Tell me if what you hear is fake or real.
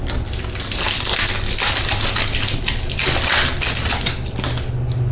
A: real